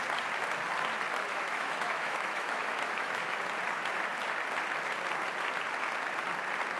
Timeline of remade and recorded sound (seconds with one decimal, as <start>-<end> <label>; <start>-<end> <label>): 0.0-1.3 recorded; 1.3-3.4 remade; 3.4-6.8 recorded